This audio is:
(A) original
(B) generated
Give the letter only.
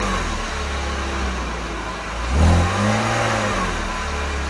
A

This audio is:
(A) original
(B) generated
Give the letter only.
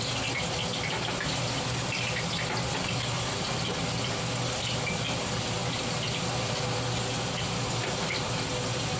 A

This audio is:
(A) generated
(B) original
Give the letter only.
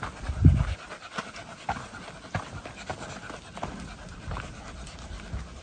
B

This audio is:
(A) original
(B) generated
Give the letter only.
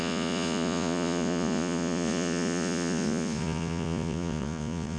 B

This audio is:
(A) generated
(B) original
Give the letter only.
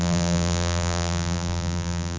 A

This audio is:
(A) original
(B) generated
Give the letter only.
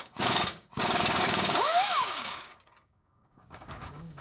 B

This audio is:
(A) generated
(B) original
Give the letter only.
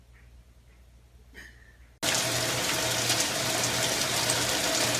B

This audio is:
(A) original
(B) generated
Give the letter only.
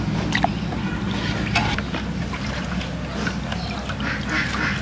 A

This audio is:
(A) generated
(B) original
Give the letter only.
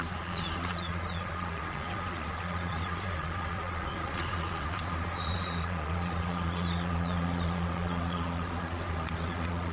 A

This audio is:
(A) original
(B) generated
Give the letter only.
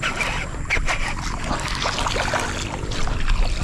A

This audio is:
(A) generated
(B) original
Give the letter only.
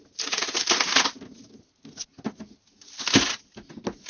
B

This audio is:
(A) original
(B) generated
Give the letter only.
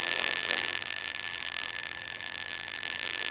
B